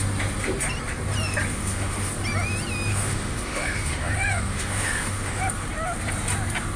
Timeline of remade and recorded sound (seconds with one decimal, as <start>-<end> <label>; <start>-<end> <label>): 0.0-1.5 recorded; 1.5-2.1 remade; 2.1-2.9 recorded; 2.9-5.4 remade; 5.4-6.8 recorded